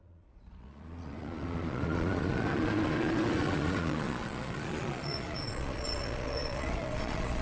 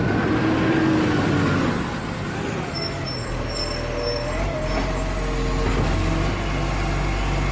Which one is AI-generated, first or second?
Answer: first